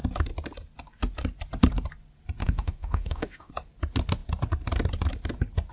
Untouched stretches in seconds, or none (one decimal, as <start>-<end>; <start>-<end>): 0.0-2.4; 3.5-5.7

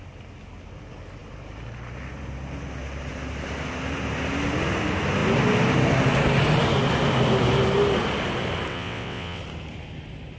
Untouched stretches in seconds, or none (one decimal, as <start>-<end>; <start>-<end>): 0.0-8.7; 9.4-10.4

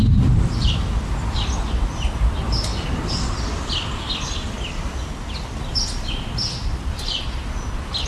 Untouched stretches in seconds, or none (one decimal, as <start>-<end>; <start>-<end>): 0.0-8.1

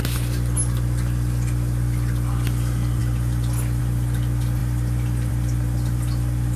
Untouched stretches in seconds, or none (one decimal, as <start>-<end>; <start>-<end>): 0.0-6.6

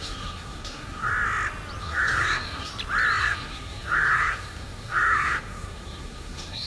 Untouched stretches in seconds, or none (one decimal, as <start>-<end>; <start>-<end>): 1.1-1.8; 2.7-3.2

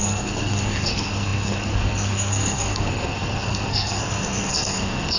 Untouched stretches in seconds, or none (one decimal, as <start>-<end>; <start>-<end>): none

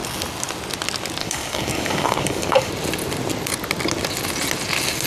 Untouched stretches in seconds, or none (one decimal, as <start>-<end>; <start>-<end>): 0.0-1.2; 2.7-5.1

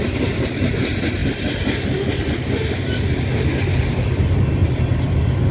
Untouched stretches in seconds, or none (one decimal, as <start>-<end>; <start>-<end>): 0.0-5.5